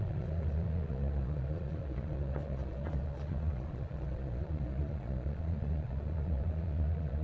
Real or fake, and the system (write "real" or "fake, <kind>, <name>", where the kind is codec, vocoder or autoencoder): fake, vocoder, Vocos